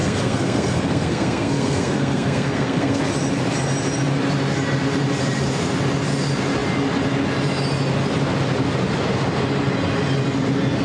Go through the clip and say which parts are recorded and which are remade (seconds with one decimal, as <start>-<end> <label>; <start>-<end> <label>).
0.0-3.0 remade; 3.0-10.8 recorded